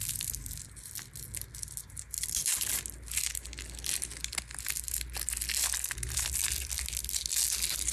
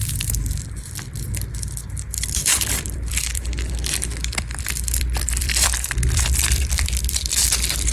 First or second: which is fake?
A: second